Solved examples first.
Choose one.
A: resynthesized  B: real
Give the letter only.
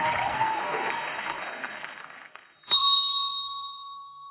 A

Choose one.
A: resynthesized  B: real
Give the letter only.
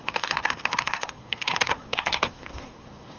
A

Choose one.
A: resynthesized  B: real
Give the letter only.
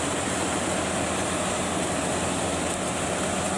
B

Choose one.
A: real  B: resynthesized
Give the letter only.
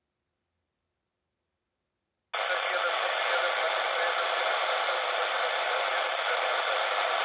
A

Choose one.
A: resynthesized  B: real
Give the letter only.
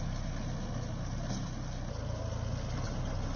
B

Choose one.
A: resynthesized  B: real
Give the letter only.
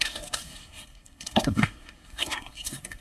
A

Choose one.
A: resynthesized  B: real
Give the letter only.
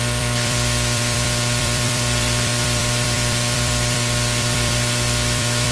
A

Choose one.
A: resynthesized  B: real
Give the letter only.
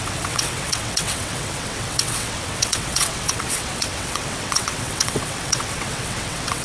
A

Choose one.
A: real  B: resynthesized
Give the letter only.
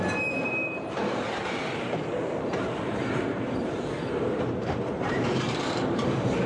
B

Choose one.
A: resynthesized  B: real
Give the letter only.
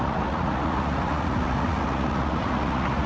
A